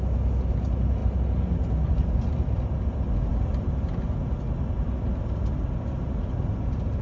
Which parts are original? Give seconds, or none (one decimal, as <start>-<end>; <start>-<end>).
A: 0.0-7.0